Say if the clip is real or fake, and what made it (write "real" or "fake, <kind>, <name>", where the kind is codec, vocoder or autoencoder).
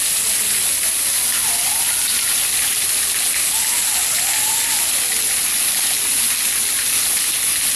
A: real